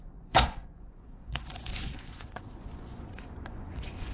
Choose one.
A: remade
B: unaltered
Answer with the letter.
A